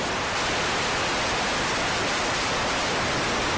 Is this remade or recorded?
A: recorded